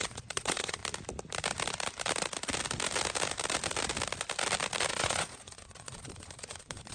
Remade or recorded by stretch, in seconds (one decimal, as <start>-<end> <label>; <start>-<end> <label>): 0.0-0.8 remade; 0.8-4.9 recorded; 4.9-6.9 remade